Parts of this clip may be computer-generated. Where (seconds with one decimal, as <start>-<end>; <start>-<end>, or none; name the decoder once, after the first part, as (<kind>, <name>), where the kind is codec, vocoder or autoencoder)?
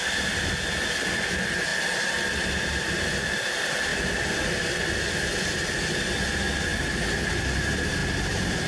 3.9-4.5 (vocoder, BigVGAN v2); 8.0-8.7